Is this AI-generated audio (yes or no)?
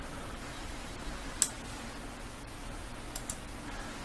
no